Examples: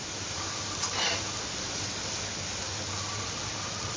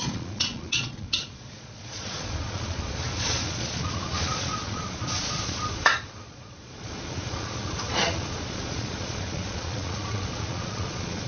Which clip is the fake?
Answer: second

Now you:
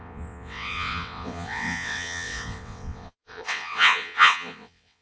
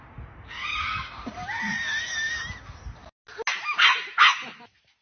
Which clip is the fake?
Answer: first